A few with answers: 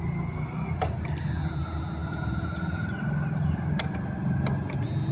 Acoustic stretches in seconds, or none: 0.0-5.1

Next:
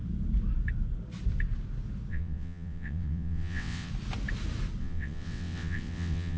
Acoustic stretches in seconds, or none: 0.0-2.1; 3.9-4.8

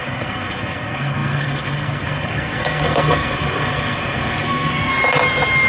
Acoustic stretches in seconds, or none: 4.9-5.7

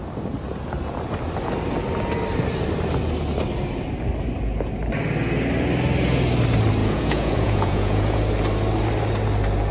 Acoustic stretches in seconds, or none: 0.0-6.8; 8.2-9.7